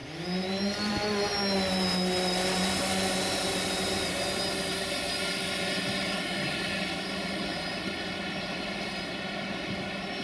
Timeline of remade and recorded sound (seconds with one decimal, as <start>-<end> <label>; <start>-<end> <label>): 0.0-10.2 recorded